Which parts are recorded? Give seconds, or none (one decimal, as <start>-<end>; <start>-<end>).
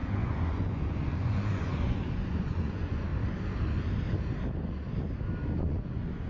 3.1-5.5